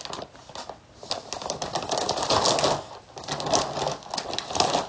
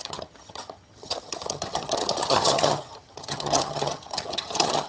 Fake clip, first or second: second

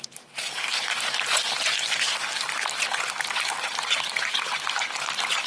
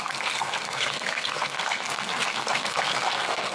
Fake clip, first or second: second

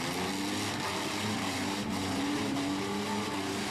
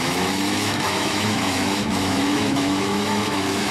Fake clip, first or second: second